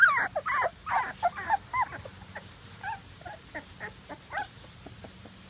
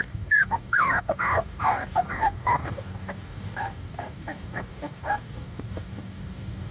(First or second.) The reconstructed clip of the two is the second